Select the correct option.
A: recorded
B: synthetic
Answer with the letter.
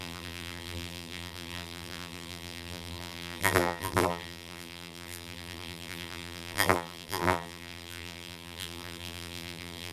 B